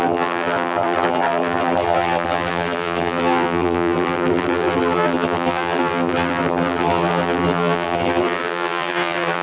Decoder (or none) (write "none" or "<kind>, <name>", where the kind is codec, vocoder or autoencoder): vocoder, BigVGAN v2